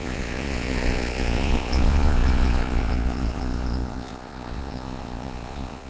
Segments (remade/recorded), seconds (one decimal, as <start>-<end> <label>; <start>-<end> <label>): 0.0-5.9 remade